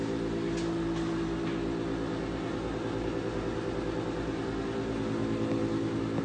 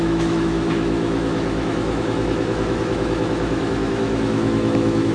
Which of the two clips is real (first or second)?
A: first